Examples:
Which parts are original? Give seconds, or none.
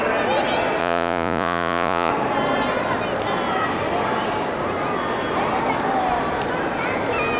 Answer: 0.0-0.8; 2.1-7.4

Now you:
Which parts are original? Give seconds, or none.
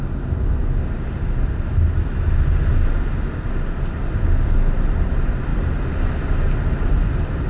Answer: 0.0-7.5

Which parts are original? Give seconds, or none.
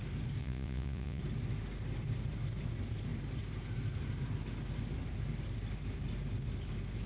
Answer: 0.0-0.4; 1.2-7.1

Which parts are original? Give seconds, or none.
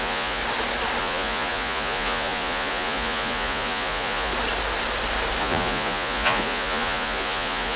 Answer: 0.4-1.0; 4.3-5.4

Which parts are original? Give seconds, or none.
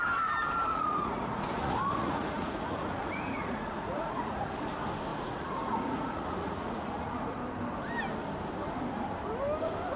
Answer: 0.0-0.7; 4.5-5.1; 7.4-10.0